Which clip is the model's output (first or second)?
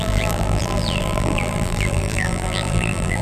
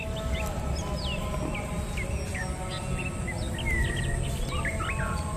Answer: first